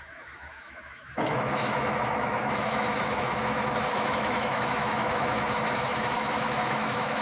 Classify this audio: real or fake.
fake